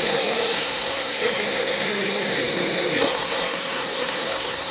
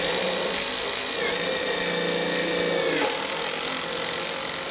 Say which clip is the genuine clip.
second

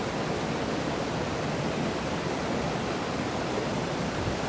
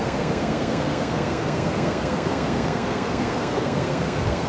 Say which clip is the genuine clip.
first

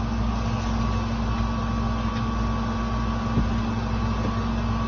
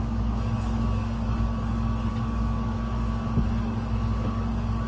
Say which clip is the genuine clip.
first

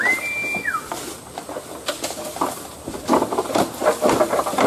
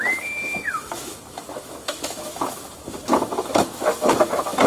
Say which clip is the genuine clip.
first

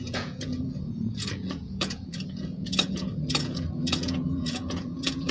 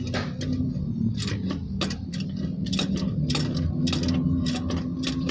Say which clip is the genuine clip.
second